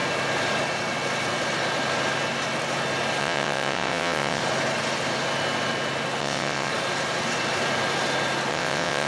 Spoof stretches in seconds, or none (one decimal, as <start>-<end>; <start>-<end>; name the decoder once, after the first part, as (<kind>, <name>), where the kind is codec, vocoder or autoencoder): 3.2-4.4 (vocoder, WaveNeXt); 6.2-6.7; 8.5-9.1